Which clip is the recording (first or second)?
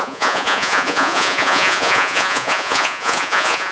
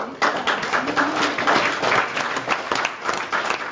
second